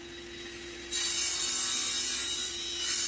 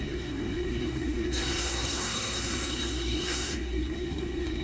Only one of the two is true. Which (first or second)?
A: first